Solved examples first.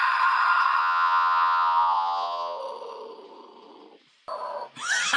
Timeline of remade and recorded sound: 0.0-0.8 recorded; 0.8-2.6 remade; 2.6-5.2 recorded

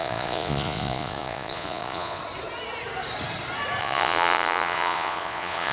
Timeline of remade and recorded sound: 0.0-2.2 remade; 2.2-3.8 recorded; 3.8-5.7 remade

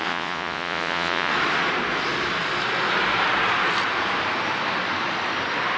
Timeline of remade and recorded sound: 0.0-1.3 remade; 1.3-5.8 recorded

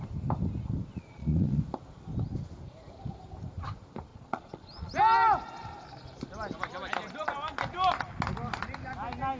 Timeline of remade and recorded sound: 0.0-0.9 recorded; 0.9-1.6 remade; 1.6-4.1 recorded; 4.1-4.9 remade; 4.9-9.4 recorded

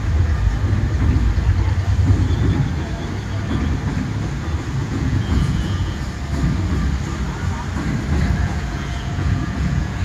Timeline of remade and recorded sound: 0.0-4.8 recorded; 4.8-6.0 remade; 6.0-8.4 recorded; 8.4-10.0 remade

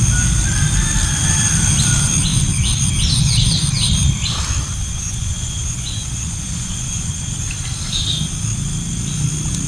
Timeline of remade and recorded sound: 0.0-4.8 recorded; 4.8-7.1 remade; 7.1-9.7 recorded

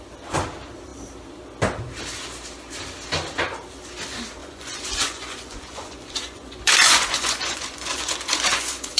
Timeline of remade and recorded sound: 0.0-4.4 recorded; 4.4-9.0 remade